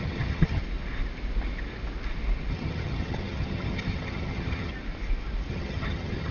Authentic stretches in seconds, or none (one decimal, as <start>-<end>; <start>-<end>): 0.6-2.5; 4.7-5.5

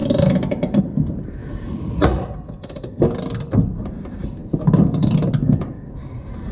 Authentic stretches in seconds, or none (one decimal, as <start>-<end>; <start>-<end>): 0.0-1.4; 2.3-6.5

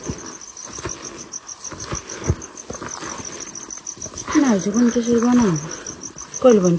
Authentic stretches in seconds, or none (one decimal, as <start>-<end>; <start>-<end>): 0.0-6.8

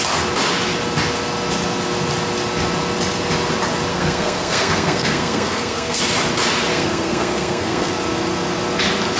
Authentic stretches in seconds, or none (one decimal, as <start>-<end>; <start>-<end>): 0.0-3.9; 6.0-6.7; 7.9-9.2

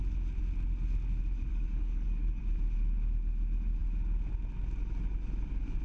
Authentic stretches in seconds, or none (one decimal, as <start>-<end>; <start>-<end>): 0.0-1.5; 2.4-5.8

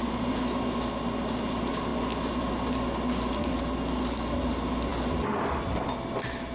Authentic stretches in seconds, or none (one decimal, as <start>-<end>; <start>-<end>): 0.0-6.5